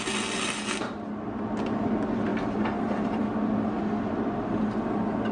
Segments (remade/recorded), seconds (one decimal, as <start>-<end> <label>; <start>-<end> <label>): 0.0-5.3 recorded